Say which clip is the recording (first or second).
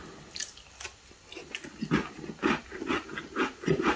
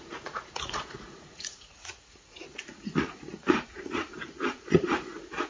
first